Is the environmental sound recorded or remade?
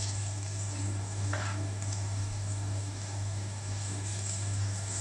remade